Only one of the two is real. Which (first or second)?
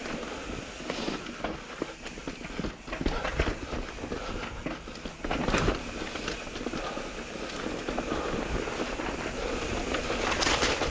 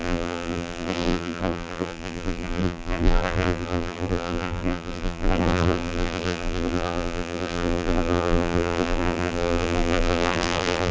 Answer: first